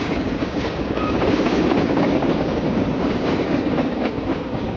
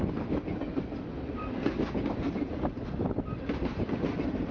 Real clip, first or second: second